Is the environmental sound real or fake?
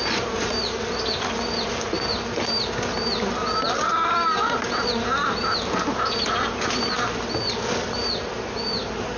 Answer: real